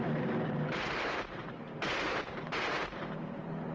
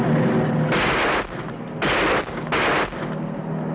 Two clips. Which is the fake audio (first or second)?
first